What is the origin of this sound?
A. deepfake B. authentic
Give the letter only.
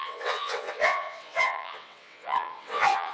A